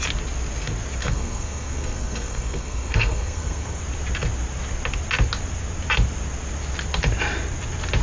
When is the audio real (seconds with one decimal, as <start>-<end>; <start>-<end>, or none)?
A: 0.0-1.0; 3.8-8.0